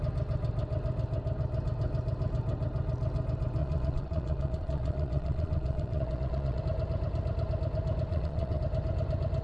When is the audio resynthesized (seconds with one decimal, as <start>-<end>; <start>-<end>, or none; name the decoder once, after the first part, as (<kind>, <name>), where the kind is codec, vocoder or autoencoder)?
3.6-6.6 (vocoder, Vocos); 8.1-8.6